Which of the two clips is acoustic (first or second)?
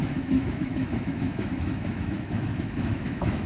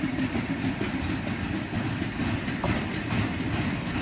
second